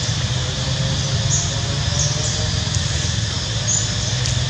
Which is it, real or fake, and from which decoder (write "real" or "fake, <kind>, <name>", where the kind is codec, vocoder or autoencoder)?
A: real